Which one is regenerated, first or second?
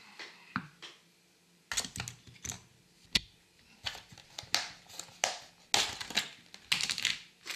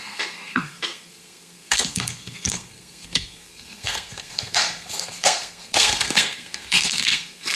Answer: second